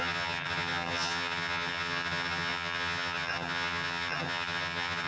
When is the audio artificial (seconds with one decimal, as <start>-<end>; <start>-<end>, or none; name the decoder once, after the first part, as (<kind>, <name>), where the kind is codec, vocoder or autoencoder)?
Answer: 0.0-5.1 (vocoder, HiFi-GAN)